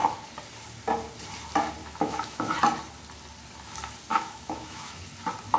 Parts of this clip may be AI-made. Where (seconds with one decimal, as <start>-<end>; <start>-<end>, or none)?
1.8-2.5; 4.1-5.0